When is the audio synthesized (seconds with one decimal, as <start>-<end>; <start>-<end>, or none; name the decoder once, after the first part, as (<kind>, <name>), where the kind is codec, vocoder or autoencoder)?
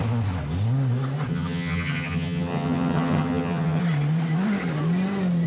1.3-3.8 (vocoder, HiFi-GAN)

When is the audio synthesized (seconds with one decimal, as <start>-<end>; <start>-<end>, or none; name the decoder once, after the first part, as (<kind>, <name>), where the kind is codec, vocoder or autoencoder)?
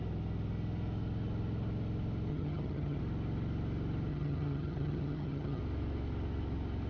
2.3-3.0 (vocoder, HiFi-GAN); 4.1-5.6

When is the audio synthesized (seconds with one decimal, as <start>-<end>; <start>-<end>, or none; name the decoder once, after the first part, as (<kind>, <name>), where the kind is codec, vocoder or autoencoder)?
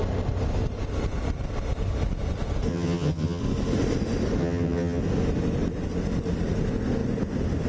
2.7-3.4 (vocoder, HiFi-GAN); 4.4-5.0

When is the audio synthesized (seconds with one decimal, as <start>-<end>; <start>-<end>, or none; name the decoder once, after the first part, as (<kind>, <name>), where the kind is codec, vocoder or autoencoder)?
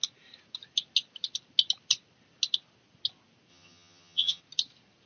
3.5-4.4 (vocoder, HiFi-GAN)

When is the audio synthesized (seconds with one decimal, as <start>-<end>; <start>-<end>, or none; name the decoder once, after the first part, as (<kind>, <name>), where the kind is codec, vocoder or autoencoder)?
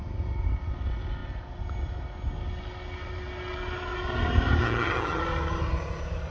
4.6-5.2 (vocoder, HiFi-GAN)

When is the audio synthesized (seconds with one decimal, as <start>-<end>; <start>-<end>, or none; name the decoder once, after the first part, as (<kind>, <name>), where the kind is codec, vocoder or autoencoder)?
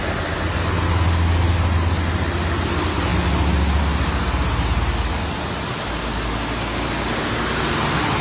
none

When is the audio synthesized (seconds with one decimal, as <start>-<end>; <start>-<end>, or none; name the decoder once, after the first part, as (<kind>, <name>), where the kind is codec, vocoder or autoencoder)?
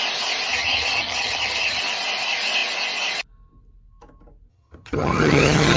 0.5-1.8 (vocoder, HiFi-GAN); 4.5-5.8